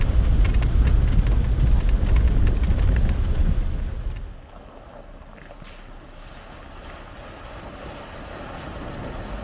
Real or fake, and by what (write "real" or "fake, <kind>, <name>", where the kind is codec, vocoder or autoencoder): real